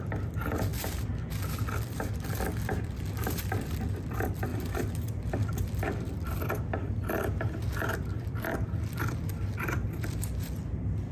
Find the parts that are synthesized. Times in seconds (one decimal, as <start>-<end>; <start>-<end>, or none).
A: 0.0-0.7; 3.4-11.1